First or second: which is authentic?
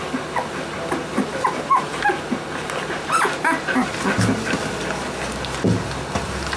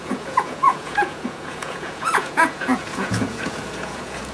first